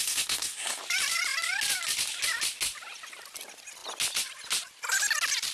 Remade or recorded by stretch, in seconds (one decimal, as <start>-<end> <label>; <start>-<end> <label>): 0.0-0.8 remade; 0.8-5.5 recorded